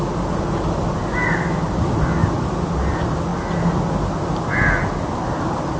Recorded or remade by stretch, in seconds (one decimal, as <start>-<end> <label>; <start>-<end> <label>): 0.0-5.8 recorded